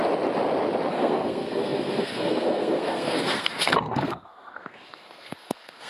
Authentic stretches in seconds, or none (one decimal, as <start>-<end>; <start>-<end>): 0.0-0.9

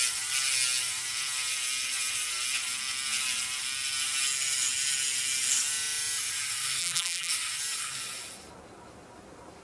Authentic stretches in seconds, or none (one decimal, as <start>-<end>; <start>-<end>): 0.0-6.8; 7.3-9.6

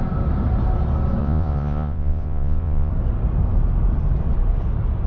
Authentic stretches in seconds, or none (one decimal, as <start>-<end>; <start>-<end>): 0.0-1.2; 2.9-5.1

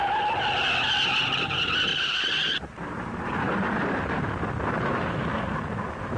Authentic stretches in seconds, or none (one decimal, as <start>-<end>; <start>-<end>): 0.0-1.9; 5.6-6.2

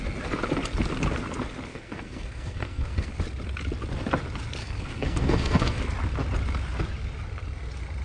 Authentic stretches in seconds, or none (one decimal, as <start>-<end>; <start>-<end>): 0.0-1.7; 3.1-4.6; 5.8-8.0

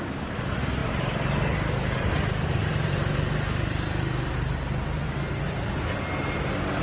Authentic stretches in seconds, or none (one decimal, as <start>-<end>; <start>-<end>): 0.0-6.8

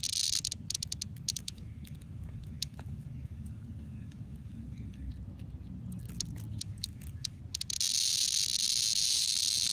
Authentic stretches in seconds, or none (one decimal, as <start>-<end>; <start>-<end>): 0.0-1.3; 5.1-6.5; 7.4-9.7

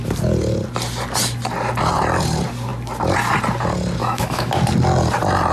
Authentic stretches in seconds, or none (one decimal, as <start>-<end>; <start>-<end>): 0.0-4.0; 4.5-5.5